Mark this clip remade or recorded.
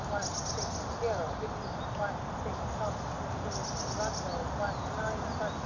recorded